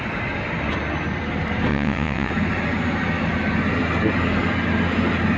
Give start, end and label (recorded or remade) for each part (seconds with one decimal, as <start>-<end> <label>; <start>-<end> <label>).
0.0-1.7 recorded; 1.7-2.3 remade; 2.3-5.4 recorded